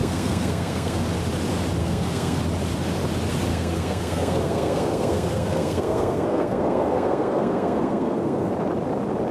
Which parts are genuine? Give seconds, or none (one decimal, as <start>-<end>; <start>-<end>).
1.0-1.8; 2.4-3.5; 8.5-9.3